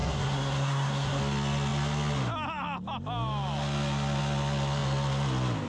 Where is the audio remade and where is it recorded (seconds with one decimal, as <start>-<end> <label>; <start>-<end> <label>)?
0.0-1.2 remade; 1.2-5.7 recorded